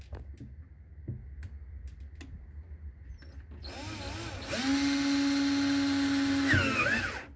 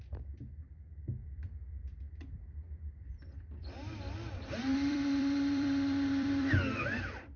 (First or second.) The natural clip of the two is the first